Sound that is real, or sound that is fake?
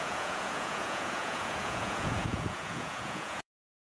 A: fake